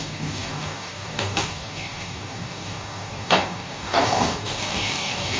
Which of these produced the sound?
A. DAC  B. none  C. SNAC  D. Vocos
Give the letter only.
A